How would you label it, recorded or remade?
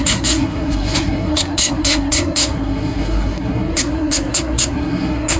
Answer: remade